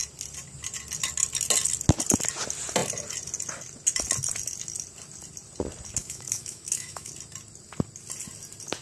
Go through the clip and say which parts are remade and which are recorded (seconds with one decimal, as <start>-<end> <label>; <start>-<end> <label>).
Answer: 0.0-6.0 recorded; 6.0-7.1 remade; 7.1-8.8 recorded